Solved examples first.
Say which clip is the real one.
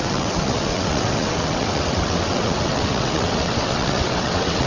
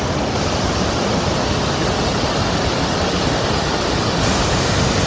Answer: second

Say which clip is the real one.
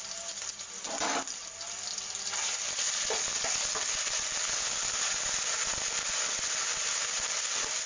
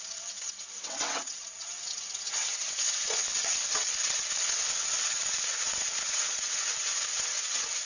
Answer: first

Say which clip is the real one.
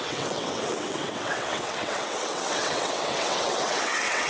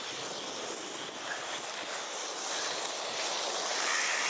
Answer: second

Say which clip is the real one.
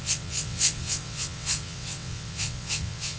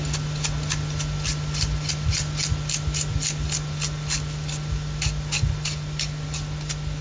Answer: second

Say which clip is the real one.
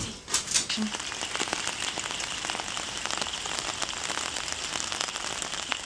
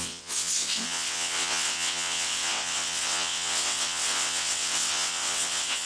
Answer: first